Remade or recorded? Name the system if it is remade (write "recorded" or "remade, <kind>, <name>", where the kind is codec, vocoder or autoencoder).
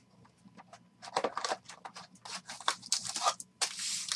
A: recorded